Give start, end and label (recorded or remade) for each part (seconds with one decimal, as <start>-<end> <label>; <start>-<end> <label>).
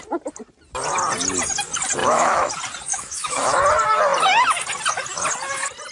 0.0-2.0 recorded; 2.0-2.5 remade; 2.5-2.9 recorded; 2.9-3.6 remade; 3.6-5.9 recorded